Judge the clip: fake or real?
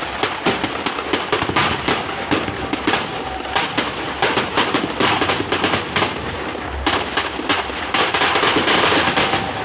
real